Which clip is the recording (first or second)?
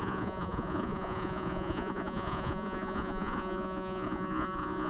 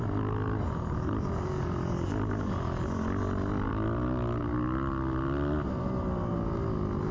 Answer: second